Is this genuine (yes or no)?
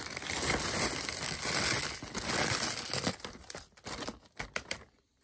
yes